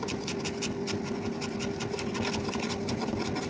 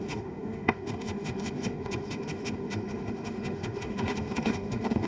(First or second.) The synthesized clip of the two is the second